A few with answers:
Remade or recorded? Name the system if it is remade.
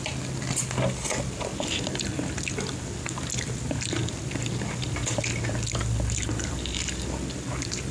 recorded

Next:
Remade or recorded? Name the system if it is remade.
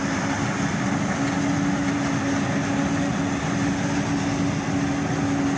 recorded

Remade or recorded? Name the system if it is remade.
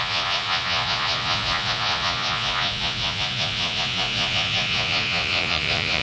remade, vocoder, Vocos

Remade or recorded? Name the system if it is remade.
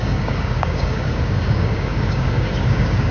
remade, codec, DAC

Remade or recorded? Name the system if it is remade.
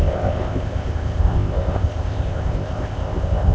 remade, codec, ZipCodec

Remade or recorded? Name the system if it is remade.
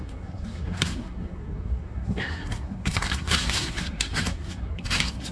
remade, codec, SNAC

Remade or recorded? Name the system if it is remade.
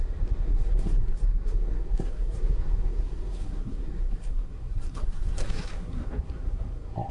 remade, codec, SNAC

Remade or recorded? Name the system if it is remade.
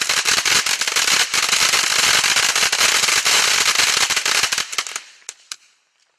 recorded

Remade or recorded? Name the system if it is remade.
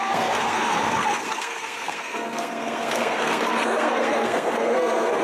remade, codec, SNAC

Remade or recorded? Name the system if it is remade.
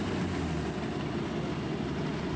recorded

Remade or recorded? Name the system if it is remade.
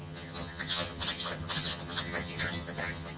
remade, vocoder, HiFi-GAN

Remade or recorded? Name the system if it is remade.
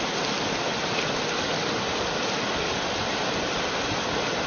recorded